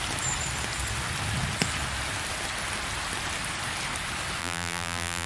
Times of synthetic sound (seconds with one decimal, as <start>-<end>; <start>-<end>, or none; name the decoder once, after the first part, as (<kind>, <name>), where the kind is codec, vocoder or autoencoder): 4.4-5.3 (vocoder, BigVGAN v2)